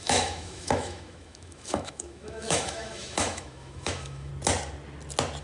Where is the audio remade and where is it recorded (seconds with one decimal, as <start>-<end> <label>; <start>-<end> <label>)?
0.0-4.3 remade; 4.3-5.4 recorded